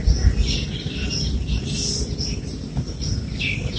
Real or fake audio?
real